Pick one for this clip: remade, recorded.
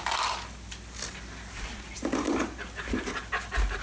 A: recorded